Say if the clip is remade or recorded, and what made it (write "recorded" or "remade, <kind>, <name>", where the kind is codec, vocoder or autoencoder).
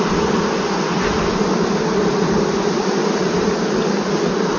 recorded